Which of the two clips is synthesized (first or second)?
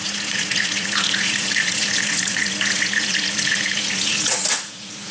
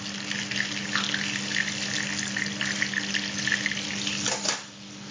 first